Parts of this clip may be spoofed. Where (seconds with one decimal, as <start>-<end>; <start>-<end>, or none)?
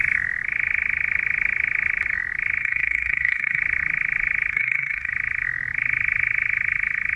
2.6-3.6; 4.5-5.1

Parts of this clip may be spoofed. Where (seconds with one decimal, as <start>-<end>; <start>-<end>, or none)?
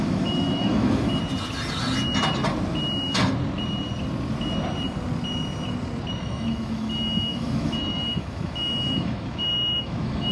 0.0-1.2; 6.2-10.3